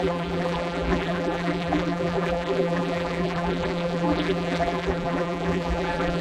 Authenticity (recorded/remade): remade